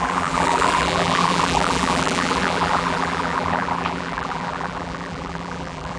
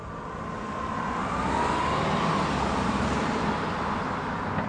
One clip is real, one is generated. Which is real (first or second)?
second